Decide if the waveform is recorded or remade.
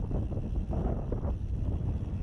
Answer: recorded